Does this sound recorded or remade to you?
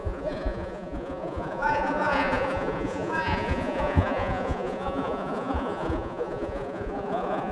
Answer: remade